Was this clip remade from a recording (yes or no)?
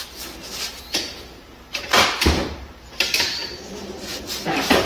yes